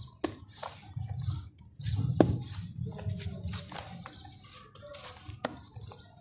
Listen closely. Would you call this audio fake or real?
real